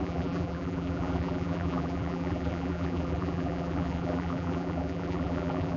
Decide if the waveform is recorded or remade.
remade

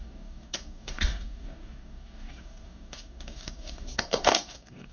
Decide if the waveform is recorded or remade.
remade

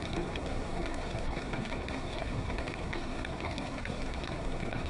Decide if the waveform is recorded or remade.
remade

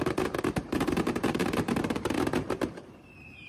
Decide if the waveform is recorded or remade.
remade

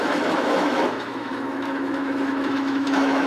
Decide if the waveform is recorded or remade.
remade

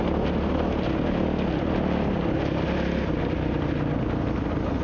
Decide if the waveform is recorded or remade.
recorded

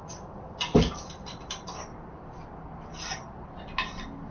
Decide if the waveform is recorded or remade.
recorded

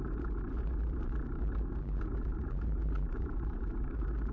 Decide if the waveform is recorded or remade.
remade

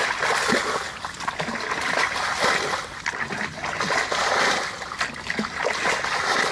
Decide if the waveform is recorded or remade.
recorded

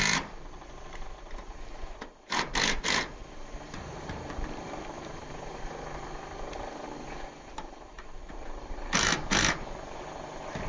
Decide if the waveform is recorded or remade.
remade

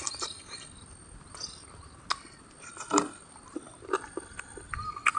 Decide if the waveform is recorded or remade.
recorded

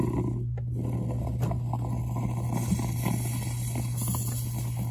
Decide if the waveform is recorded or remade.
recorded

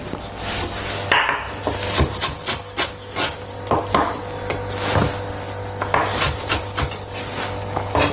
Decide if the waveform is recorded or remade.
recorded